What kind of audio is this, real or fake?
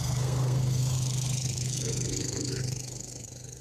fake